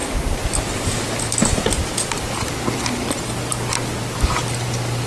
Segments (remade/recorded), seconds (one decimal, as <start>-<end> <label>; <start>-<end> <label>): 0.0-5.1 recorded